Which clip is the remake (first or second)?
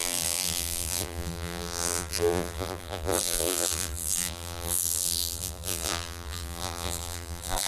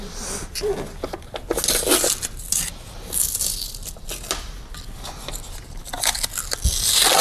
first